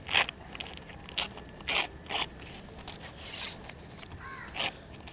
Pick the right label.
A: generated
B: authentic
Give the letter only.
B